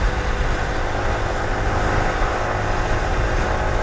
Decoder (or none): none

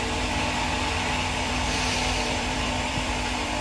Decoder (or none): vocoder, BigVGAN v2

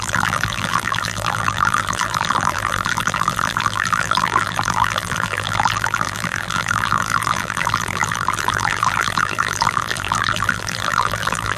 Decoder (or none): vocoder, BigVGAN v2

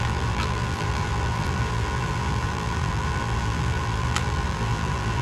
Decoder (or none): vocoder, BigVGAN v2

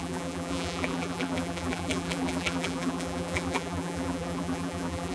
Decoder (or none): vocoder, BigVGAN v2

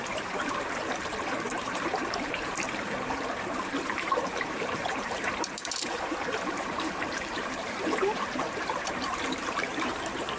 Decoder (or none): vocoder, BigVGAN v2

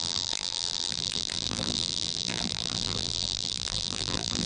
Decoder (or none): vocoder, BigVGAN v2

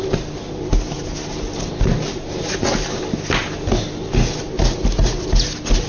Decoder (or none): none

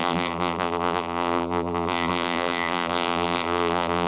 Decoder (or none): vocoder, BigVGAN v2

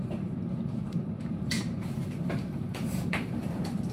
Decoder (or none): vocoder, BigVGAN v2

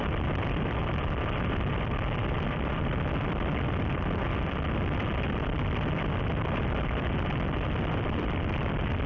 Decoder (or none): vocoder, BigVGAN v2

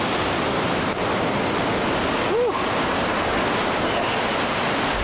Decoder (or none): none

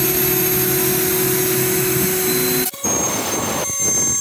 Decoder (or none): none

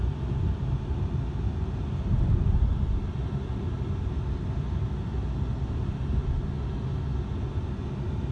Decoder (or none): none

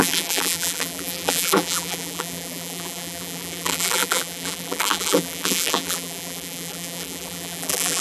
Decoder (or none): vocoder, BigVGAN v2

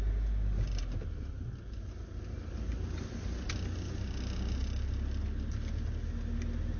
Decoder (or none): none